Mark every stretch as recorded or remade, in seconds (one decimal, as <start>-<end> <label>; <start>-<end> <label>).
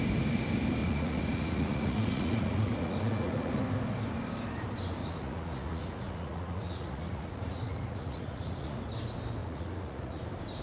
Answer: 0.0-0.8 recorded; 0.8-3.6 remade; 3.6-5.0 recorded; 5.0-8.8 remade; 8.8-9.4 recorded; 9.4-10.2 remade; 10.2-10.6 recorded